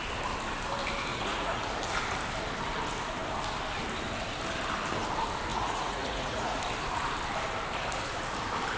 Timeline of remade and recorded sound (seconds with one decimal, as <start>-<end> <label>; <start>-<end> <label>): 0.0-1.1 recorded; 1.1-1.6 remade; 1.6-5.5 recorded; 5.5-6.6 remade; 6.6-8.8 recorded